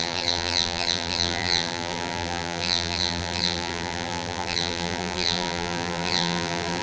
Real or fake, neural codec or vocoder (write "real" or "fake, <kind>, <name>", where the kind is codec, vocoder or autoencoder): fake, vocoder, BigVGAN v2